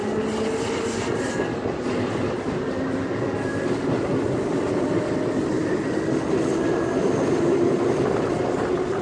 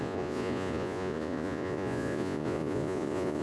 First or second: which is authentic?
first